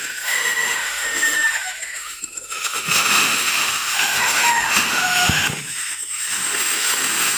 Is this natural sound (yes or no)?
no